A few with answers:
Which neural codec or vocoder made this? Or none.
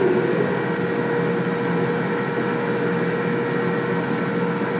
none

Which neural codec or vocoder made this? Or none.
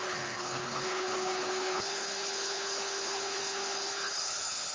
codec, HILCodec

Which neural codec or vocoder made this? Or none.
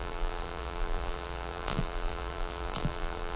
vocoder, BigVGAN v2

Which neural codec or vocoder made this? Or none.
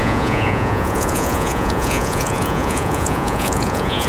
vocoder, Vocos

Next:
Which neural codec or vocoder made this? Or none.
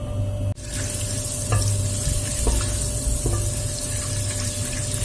none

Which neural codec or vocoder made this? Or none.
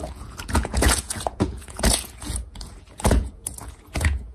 vocoder, Vocos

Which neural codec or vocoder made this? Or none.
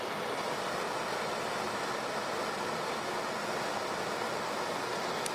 none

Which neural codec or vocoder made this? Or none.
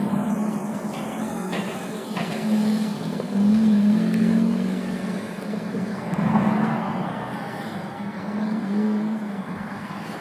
codec, SNAC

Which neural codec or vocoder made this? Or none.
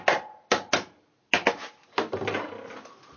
none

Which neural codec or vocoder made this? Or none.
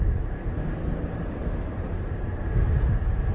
none